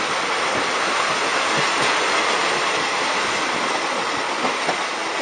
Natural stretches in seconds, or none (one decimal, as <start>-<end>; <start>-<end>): 0.0-5.2